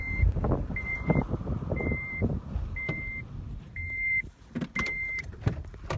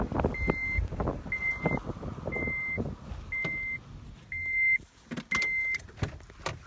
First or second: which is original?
second